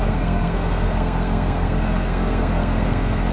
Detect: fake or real fake